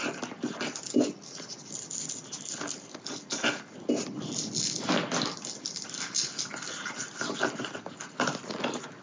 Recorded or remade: recorded